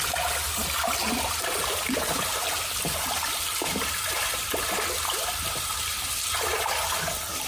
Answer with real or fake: real